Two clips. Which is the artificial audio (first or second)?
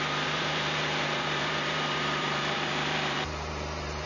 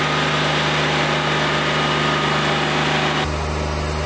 first